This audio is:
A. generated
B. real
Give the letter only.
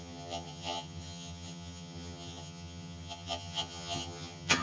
A